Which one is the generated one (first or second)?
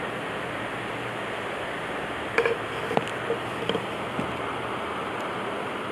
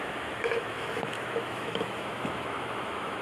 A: second